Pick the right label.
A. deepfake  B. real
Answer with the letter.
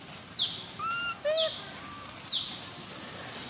B